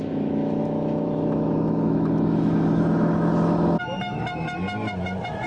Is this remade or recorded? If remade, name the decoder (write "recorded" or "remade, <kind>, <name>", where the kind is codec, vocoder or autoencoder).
remade, autoencoder, DAC-VAE